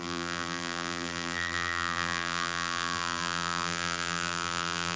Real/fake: fake